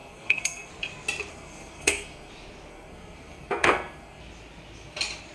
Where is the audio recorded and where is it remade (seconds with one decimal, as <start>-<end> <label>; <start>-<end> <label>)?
0.0-0.7 remade; 0.7-1.3 recorded; 1.3-2.3 remade; 2.3-2.7 recorded; 2.7-4.2 remade; 4.2-5.3 recorded